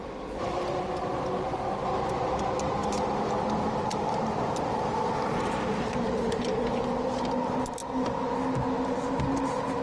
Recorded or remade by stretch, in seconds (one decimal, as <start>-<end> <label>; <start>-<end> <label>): 0.0-0.6 remade; 0.6-2.8 recorded; 2.8-5.3 remade; 5.3-9.8 recorded